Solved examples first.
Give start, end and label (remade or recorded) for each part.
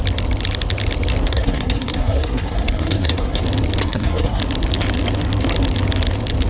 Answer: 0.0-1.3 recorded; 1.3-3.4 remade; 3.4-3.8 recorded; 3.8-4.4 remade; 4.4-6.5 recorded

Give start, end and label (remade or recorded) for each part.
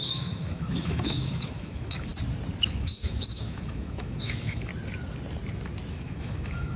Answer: 0.0-2.1 remade; 2.1-2.6 recorded; 2.6-4.7 remade; 4.7-5.9 recorded; 5.9-6.8 remade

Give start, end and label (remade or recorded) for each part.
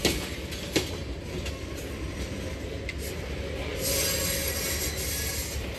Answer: 0.0-5.8 recorded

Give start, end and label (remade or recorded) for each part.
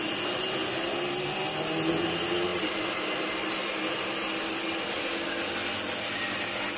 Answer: 0.0-6.8 recorded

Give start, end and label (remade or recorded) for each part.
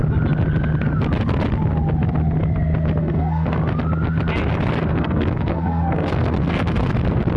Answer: 0.0-3.0 recorded; 3.0-3.6 remade; 3.6-4.9 recorded; 4.9-6.9 remade; 6.9-7.4 recorded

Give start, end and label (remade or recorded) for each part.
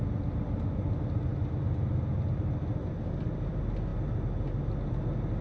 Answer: 0.0-5.4 recorded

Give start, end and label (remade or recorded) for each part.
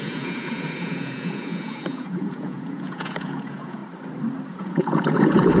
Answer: 0.0-3.8 remade; 3.8-4.5 recorded; 4.5-5.6 remade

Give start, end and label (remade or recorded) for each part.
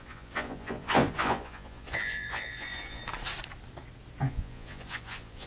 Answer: 0.0-3.0 remade; 3.0-4.2 recorded; 4.2-5.5 remade